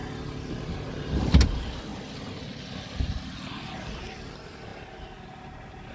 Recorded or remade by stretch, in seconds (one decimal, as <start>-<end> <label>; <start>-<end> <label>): 0.0-5.9 recorded